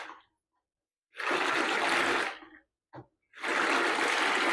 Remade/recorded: recorded